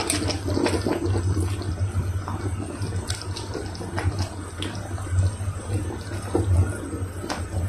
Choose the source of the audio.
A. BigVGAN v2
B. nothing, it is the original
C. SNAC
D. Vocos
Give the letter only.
B